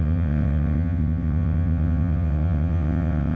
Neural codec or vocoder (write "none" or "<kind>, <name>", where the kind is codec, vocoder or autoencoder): vocoder, WaveNeXt